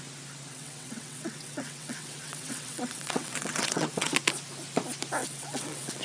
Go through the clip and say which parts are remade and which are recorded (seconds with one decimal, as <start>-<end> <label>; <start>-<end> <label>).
0.0-0.5 recorded; 0.5-4.1 remade; 4.1-5.2 recorded; 5.2-6.0 remade